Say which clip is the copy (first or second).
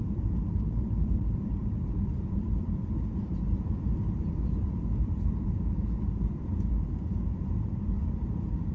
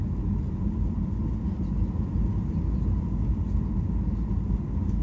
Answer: first